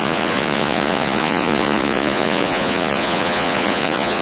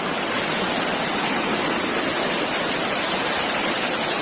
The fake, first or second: first